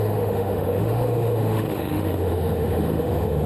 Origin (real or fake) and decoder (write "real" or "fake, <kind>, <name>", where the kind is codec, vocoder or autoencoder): fake, autoencoder, DAC-VAE